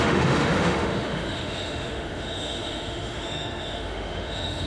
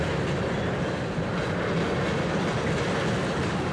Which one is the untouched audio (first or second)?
second